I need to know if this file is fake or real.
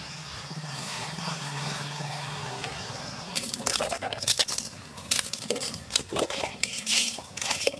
fake